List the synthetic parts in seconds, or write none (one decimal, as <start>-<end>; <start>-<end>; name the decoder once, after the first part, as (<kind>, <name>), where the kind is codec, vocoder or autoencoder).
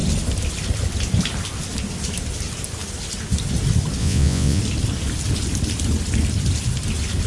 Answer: 4.0-4.6 (vocoder, Vocos)